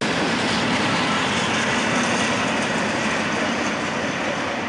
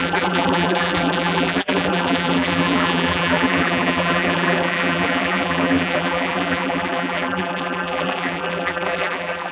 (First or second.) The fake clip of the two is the second